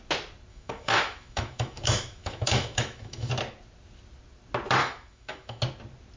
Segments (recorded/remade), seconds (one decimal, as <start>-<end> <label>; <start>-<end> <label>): 0.0-0.5 recorded; 0.5-3.3 remade; 3.3-4.8 recorded; 4.8-5.6 remade; 5.6-6.2 recorded